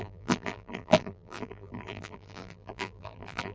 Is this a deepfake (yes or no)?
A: yes